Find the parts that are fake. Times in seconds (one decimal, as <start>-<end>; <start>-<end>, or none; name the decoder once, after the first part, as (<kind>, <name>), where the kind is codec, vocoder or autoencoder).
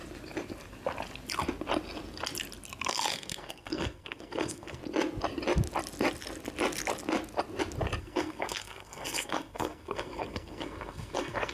3.1-4.8 (codec, SNAC); 8.0-11.5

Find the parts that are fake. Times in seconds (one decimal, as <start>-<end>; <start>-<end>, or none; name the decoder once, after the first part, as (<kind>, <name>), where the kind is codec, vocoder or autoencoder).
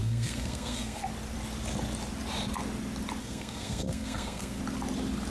0.0-1.0 (codec, SNAC); 3.2-4.6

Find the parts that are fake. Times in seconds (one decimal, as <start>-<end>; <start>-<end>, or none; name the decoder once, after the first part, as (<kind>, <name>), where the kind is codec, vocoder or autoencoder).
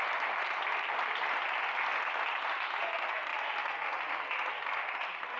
none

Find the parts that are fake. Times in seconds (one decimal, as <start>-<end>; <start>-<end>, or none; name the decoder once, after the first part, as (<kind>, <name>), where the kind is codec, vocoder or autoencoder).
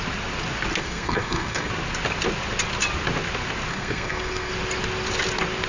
0.8-1.7 (codec, SNAC); 3.7-4.5